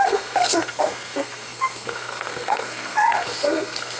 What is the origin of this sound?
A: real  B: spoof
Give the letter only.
B